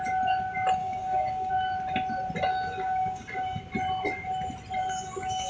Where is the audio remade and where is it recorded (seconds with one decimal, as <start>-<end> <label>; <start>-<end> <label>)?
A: 0.0-0.8 recorded; 0.8-1.5 remade; 1.5-2.5 recorded; 2.5-3.6 remade; 3.6-4.8 recorded; 4.8-5.5 remade